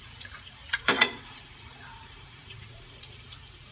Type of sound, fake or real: fake